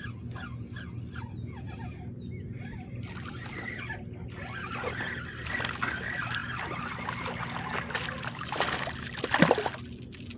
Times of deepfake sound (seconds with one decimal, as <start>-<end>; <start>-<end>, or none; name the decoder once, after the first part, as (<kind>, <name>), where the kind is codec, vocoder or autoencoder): none